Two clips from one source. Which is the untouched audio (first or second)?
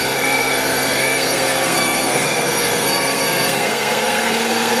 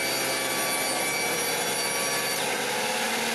second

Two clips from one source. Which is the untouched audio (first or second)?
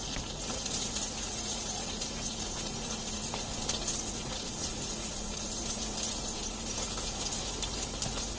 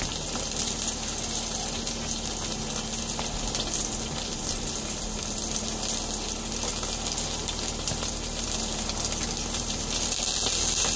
second